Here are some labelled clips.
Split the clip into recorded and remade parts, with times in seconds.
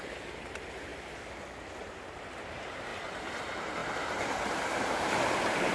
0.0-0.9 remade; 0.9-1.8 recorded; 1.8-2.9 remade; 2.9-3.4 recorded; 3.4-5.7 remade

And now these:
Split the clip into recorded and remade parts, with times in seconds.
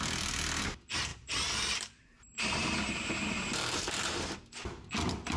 0.0-1.1 recorded; 1.1-4.3 remade; 4.3-5.4 recorded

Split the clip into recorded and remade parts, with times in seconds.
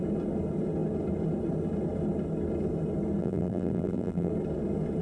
0.0-3.2 recorded; 3.2-4.3 remade; 4.3-5.0 recorded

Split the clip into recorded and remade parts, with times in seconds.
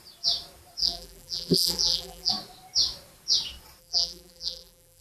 0.0-0.8 recorded; 0.8-2.3 remade; 2.3-3.8 recorded; 3.8-5.0 remade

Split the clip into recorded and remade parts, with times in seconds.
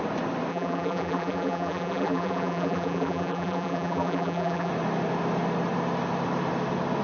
0.0-0.5 recorded; 0.5-4.7 remade; 4.7-7.0 recorded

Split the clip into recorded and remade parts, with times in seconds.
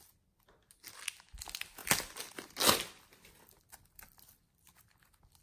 0.0-5.4 recorded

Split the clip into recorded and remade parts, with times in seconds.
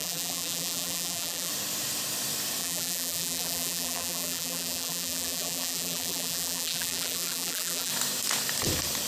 0.0-1.5 remade; 1.5-2.6 recorded; 2.6-7.9 remade; 7.9-9.1 recorded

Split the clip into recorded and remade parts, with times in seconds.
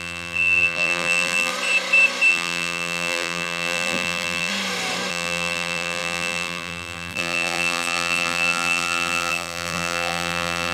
0.0-1.5 remade; 1.5-2.3 recorded; 2.3-4.5 remade; 4.5-5.1 recorded; 5.1-10.7 remade